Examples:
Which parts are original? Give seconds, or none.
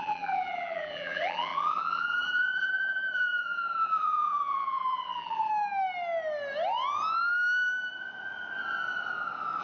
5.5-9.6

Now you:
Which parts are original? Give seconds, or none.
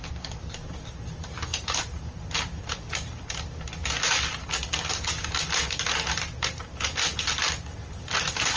0.0-8.6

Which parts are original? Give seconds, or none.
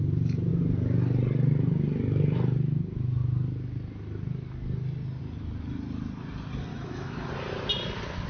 0.0-6.7; 7.3-8.3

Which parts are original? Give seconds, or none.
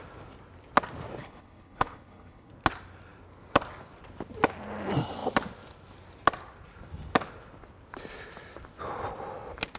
0.0-1.2; 2.5-9.8